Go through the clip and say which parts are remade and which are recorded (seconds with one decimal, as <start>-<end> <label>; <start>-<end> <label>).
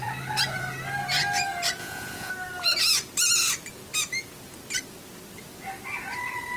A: 0.0-1.8 recorded; 1.8-2.3 remade; 2.3-6.6 recorded